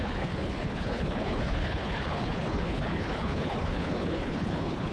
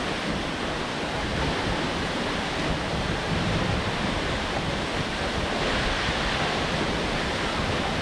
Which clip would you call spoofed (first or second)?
first